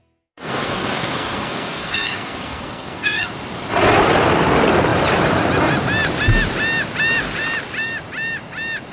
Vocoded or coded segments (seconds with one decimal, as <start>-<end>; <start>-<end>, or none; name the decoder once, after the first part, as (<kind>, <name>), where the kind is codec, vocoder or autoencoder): 0.0-3.3 (codec, SNAC)